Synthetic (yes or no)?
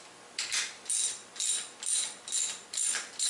no